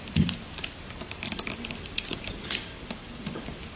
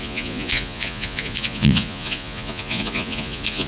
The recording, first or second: first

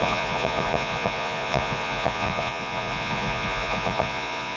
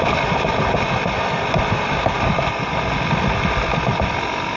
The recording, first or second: second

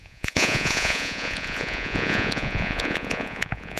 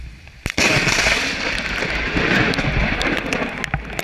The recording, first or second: second